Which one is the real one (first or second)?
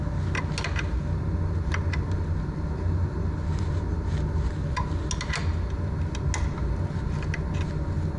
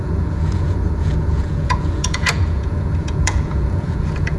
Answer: first